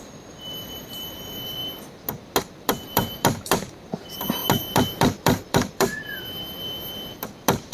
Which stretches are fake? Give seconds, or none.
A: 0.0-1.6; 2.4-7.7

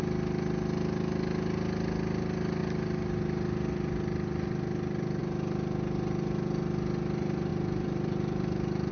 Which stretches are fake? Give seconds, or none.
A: 7.5-8.9

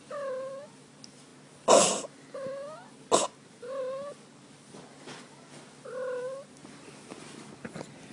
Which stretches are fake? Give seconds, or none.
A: none

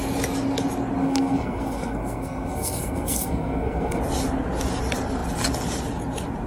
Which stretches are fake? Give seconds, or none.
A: 1.0-4.0

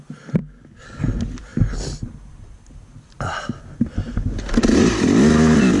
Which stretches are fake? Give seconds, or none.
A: 0.4-1.0

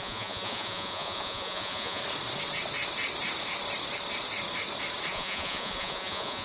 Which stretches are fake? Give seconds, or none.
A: 0.0-2.0; 5.1-6.4

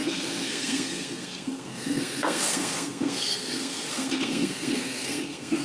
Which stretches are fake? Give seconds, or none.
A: 0.0-5.6

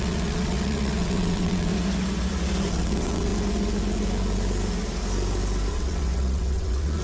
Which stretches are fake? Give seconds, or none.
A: 0.0-1.7; 2.7-3.3; 5.7-7.0